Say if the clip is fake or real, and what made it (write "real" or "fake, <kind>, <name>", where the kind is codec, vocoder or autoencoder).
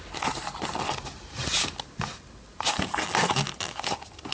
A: real